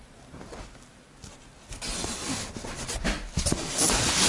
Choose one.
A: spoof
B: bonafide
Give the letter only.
B